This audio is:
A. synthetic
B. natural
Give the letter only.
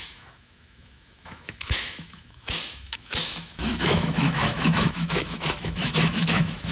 A